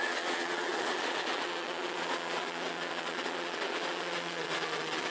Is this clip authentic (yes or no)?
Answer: no